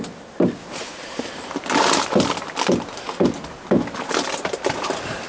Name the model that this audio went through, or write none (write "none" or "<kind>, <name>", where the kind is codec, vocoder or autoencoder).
none